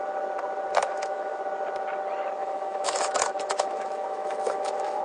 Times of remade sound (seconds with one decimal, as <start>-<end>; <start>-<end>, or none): 0.8-1.4; 2.4-5.0